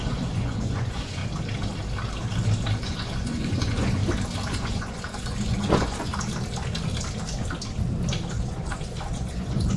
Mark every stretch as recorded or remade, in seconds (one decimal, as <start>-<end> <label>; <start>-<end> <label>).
0.0-1.2 remade; 1.2-2.8 recorded; 2.8-4.0 remade; 4.0-4.5 recorded; 4.5-6.1 remade; 6.1-8.3 recorded; 8.3-9.8 remade